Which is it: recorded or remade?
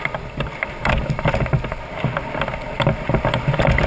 recorded